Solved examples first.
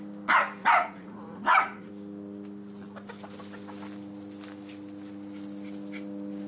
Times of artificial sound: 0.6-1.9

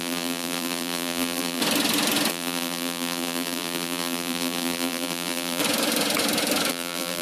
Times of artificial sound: 0.0-1.6; 2.3-5.6; 6.7-7.2